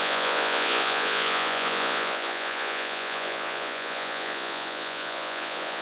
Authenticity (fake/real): fake